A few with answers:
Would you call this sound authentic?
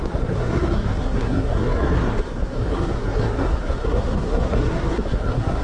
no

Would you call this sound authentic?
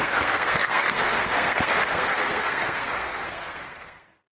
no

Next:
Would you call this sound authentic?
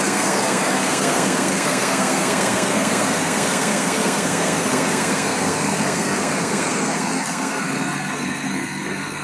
no